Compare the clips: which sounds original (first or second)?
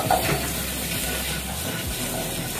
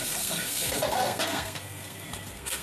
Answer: first